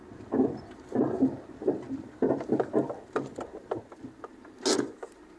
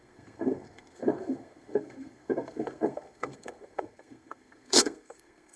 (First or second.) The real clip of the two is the first